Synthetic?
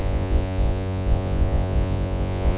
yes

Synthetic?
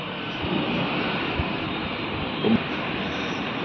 no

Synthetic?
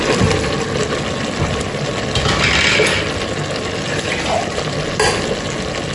no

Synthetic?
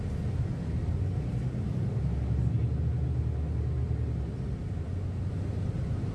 no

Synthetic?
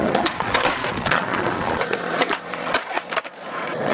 yes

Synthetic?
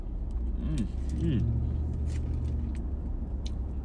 no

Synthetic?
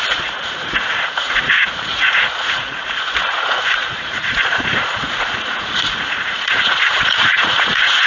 yes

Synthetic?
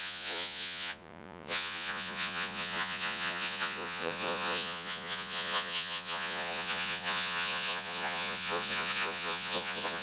yes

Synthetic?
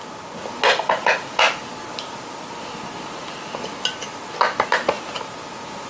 no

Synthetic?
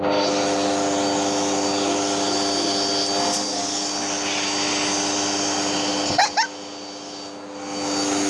no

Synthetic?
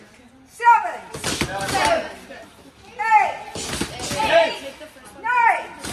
no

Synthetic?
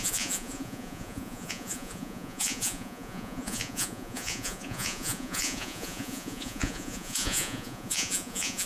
yes